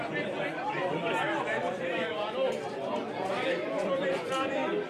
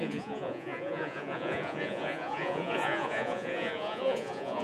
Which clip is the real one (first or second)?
first